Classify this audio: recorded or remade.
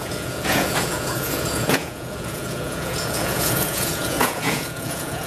remade